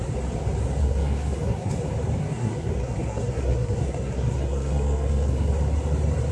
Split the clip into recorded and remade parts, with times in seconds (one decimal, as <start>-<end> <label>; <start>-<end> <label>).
0.0-0.8 recorded; 0.8-1.7 remade; 1.7-2.2 recorded; 2.2-5.5 remade; 5.5-6.3 recorded